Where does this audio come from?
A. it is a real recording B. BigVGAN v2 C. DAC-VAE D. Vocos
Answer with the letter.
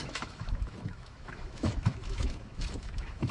C